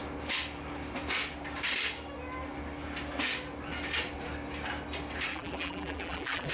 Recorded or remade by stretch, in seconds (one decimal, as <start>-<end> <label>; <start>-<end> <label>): 0.0-5.3 recorded; 5.3-6.5 remade